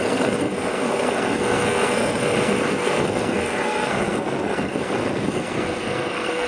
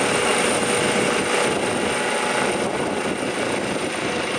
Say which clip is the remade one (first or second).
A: first